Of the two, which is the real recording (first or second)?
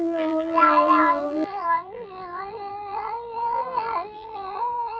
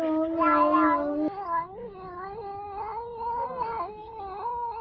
second